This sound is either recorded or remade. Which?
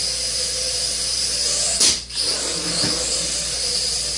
recorded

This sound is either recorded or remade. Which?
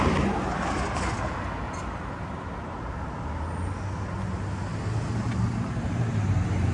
recorded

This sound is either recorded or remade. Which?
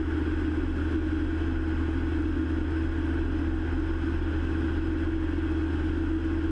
recorded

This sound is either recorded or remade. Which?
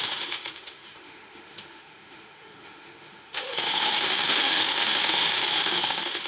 remade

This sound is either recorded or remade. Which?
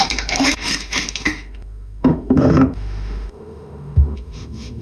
remade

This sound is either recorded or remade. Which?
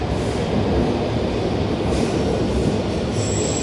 recorded